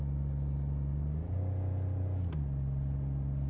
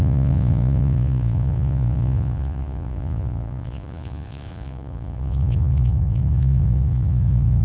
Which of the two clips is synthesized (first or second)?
second